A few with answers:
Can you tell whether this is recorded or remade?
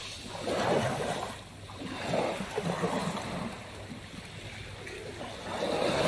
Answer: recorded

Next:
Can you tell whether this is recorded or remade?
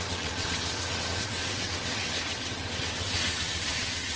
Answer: remade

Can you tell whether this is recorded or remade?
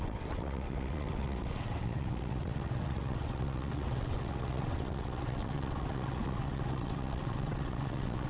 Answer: remade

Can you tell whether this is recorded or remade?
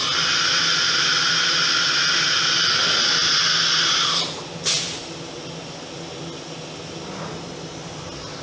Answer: recorded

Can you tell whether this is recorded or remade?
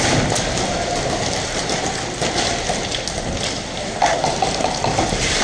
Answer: recorded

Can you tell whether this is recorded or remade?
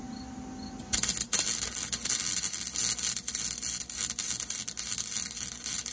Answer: recorded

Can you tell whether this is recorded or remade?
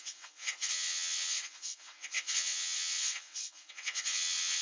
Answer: remade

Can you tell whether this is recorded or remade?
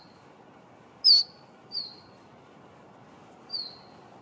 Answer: recorded